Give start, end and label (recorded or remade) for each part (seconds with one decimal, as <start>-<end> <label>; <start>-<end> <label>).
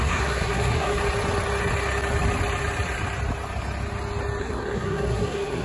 0.0-1.0 remade; 1.0-4.4 recorded; 4.4-5.6 remade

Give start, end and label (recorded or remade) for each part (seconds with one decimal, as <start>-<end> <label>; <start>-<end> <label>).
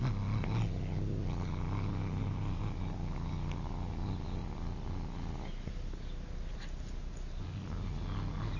0.0-1.9 recorded; 1.9-2.6 remade; 2.6-8.6 recorded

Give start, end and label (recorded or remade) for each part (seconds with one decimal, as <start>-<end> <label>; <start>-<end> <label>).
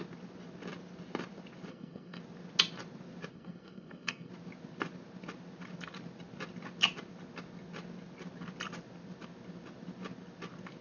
0.0-1.7 recorded; 1.7-2.2 remade; 2.2-3.3 recorded; 3.3-4.3 remade; 4.3-10.8 recorded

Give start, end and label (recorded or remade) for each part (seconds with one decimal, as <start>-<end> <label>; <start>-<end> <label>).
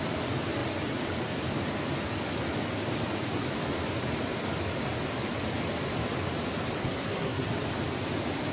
0.0-6.8 recorded; 6.8-7.5 remade; 7.5-8.5 recorded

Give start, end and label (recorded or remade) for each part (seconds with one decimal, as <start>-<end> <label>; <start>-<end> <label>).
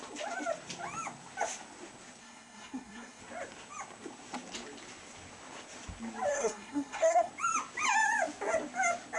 0.0-2.2 recorded; 2.2-3.2 remade; 3.2-6.3 recorded; 6.3-7.3 remade; 7.3-9.2 recorded